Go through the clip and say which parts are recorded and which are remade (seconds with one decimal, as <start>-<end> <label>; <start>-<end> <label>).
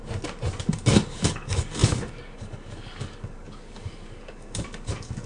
0.0-0.6 recorded; 0.6-5.3 remade